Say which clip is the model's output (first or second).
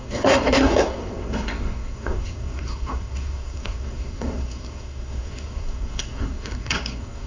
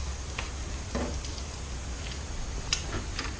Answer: first